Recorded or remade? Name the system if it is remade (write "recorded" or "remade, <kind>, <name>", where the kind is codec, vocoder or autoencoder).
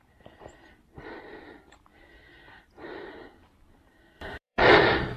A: remade, vocoder, BigVGAN v2